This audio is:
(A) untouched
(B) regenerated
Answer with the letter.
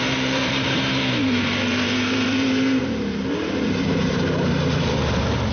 B